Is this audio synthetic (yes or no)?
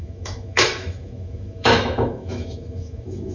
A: yes